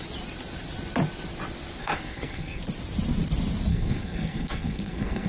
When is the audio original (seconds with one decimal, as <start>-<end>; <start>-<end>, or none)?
0.0-1.8; 2.6-3.7